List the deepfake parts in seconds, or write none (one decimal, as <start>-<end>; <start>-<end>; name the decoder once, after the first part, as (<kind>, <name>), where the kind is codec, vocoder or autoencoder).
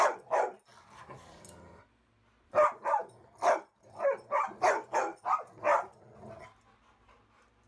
none